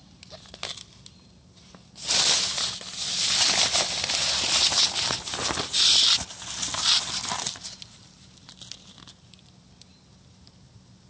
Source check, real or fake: real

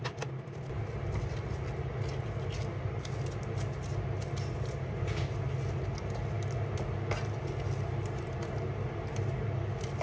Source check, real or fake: real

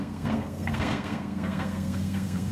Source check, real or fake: fake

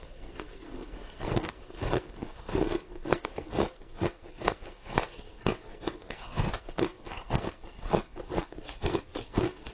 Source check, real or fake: fake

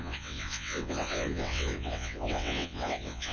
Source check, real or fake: fake